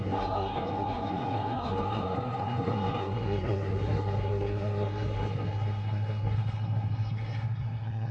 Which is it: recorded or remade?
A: remade